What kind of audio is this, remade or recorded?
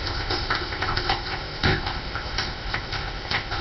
remade